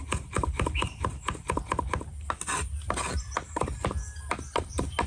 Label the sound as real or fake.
real